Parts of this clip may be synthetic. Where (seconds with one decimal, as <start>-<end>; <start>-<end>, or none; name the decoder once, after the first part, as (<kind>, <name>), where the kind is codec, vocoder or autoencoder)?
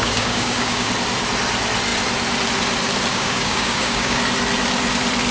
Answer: 0.0-0.9 (codec, DAC); 3.1-4.2